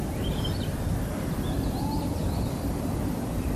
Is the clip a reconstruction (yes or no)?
yes